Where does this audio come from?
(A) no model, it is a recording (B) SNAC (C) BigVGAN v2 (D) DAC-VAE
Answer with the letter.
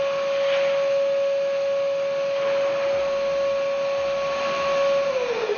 A